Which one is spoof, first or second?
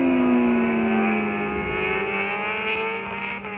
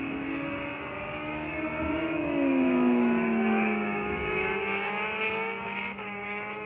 second